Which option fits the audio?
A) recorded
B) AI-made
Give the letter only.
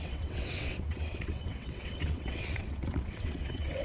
B